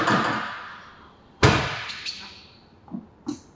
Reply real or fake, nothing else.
real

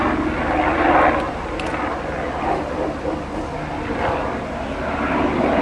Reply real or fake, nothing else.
real